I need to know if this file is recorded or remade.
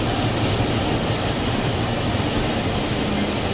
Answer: recorded